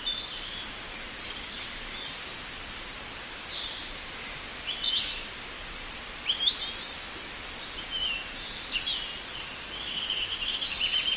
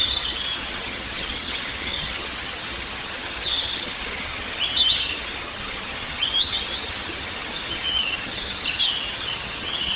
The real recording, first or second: first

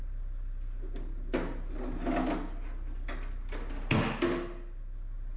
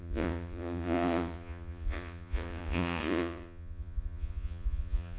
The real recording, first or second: first